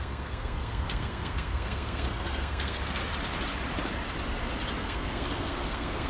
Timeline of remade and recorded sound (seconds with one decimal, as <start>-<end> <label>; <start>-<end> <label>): 0.0-3.0 remade; 3.0-4.8 recorded; 4.8-6.1 remade